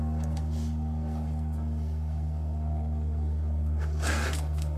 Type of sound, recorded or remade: remade